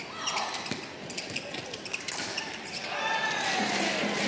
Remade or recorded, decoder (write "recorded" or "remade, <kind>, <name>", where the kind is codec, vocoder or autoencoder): recorded